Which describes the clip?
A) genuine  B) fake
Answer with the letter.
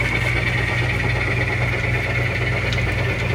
A